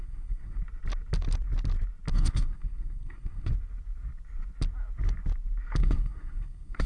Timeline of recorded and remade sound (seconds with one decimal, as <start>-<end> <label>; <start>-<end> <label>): 0.0-0.6 remade; 0.6-2.1 recorded; 2.1-3.5 remade; 3.5-5.8 recorded; 5.8-6.9 remade